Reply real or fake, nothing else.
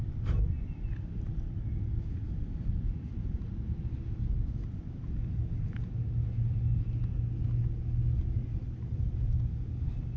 real